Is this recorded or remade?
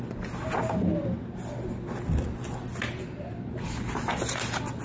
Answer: recorded